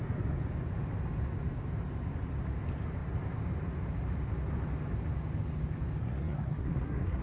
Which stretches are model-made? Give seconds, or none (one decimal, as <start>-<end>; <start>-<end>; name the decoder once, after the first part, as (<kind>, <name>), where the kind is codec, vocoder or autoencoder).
6.0-7.2 (codec, SNAC)